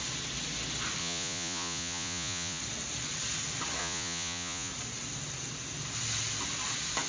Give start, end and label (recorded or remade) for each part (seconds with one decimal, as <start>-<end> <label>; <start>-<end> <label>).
0.0-1.0 recorded; 1.0-2.6 remade; 2.6-3.8 recorded; 3.8-4.7 remade; 4.7-7.1 recorded